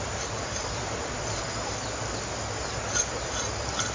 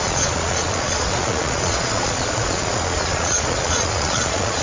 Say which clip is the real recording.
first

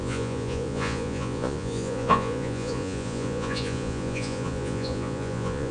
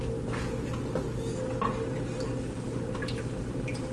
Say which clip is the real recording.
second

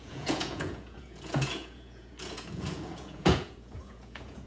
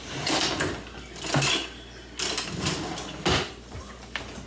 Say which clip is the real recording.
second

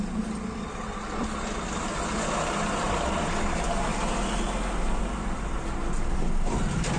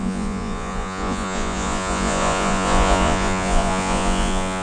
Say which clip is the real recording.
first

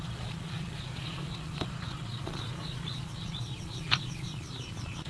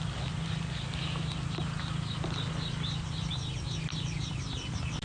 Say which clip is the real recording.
second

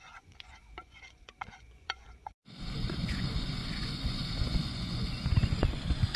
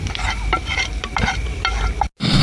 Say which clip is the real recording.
second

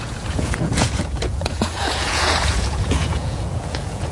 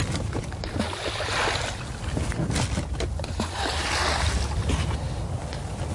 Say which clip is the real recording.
second